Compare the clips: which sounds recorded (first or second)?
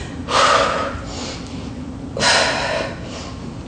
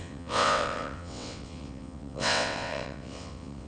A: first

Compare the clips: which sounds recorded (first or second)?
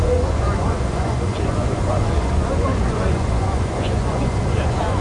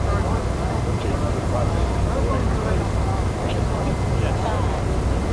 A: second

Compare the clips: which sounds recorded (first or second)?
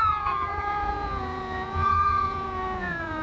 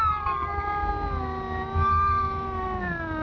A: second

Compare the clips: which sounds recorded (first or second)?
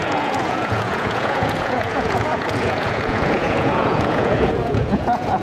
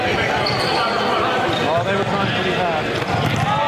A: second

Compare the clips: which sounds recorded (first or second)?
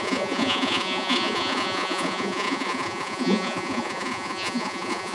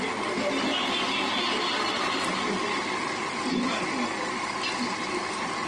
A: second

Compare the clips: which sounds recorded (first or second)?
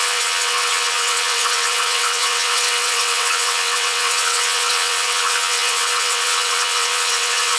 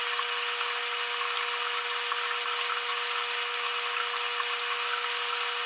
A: second